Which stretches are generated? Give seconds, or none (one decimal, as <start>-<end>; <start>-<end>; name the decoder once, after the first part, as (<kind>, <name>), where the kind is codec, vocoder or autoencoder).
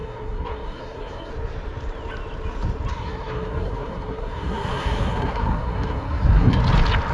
0.0-1.3 (codec, SNAC); 2.9-6.6